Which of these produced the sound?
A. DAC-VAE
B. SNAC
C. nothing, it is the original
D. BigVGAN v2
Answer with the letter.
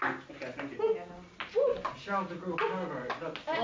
C